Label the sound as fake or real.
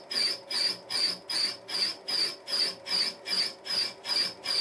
real